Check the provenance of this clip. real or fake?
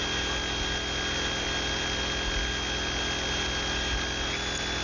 real